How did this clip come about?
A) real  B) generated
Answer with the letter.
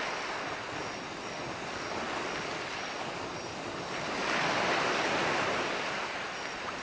A